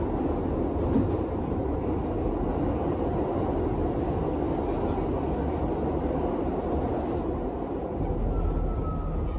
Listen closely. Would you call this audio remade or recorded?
recorded